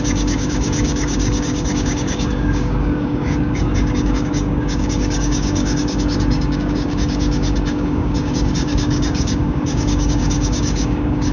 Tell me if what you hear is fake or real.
fake